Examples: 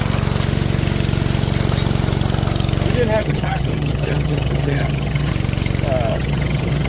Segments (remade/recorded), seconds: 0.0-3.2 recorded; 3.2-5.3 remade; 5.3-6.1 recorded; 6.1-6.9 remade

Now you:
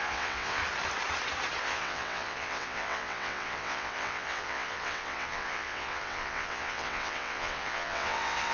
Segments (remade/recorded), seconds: 0.0-0.6 remade; 0.6-1.6 recorded; 1.6-8.5 remade

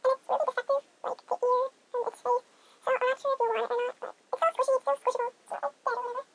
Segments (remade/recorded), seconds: 0.0-6.3 recorded

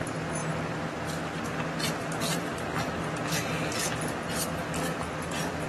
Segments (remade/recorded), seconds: 0.0-5.7 recorded

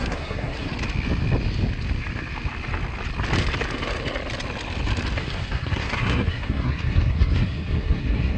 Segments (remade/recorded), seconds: 0.0-0.7 remade; 0.7-5.2 recorded; 5.2-8.4 remade

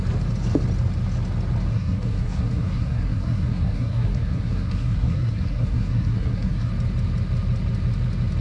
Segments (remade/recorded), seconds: 0.0-1.7 recorded; 1.7-6.7 remade; 6.7-8.4 recorded